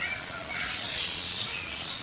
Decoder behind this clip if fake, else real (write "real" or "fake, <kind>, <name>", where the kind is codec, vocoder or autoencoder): fake, vocoder, Vocos